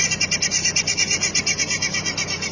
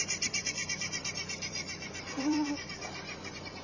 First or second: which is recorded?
first